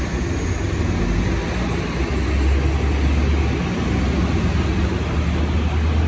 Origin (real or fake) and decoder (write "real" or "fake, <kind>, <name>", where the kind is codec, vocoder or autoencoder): real